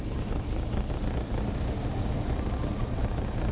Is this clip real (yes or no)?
yes